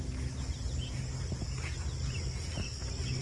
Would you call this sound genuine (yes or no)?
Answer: yes